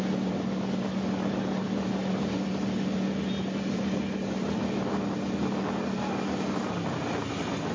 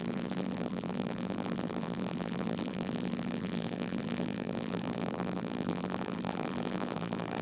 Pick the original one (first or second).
first